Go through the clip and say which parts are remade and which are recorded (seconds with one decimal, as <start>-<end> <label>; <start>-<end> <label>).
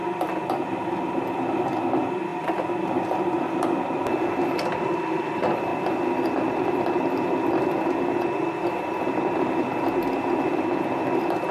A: 0.0-11.5 remade